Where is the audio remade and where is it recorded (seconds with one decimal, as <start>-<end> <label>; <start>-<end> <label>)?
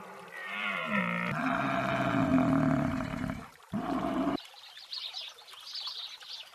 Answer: 0.0-0.4 recorded; 0.4-1.0 remade; 1.0-2.3 recorded; 2.3-5.1 remade; 5.1-6.5 recorded